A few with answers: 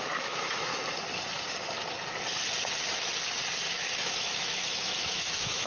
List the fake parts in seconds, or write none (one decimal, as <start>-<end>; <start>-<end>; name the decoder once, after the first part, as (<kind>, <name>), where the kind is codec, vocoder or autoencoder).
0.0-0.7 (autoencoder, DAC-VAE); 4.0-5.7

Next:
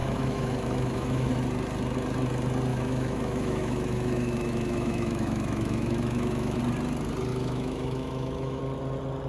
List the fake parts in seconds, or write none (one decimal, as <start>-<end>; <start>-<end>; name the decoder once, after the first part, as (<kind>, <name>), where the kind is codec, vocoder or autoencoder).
0.0-1.3 (autoencoder, DAC-VAE); 2.7-6.6; 7.3-8.6

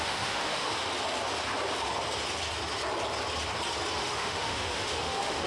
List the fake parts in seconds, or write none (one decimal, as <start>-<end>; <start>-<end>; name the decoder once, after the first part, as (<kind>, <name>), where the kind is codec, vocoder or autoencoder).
0.0-0.7 (autoencoder, DAC-VAE); 4.0-5.5